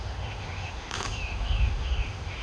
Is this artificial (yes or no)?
yes